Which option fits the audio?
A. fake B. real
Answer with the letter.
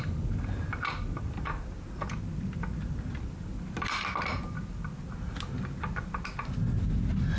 B